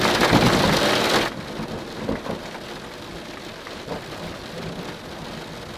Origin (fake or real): real